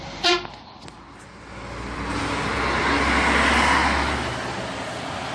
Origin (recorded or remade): recorded